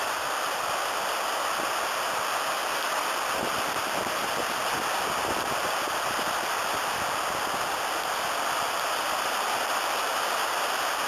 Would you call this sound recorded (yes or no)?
yes